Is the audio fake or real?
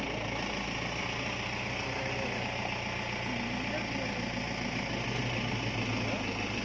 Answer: real